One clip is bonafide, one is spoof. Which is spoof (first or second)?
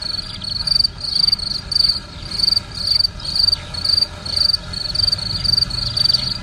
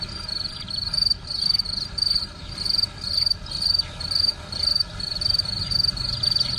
second